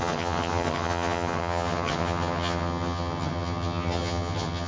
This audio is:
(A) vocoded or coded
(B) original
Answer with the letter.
A